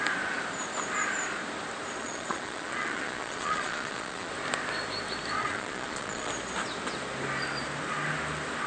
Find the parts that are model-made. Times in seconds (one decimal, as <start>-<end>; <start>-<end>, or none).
2.0-4.3; 5.4-6.3